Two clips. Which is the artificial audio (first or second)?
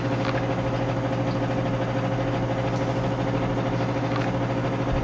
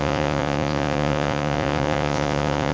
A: second